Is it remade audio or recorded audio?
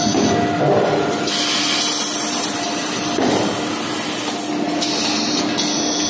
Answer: recorded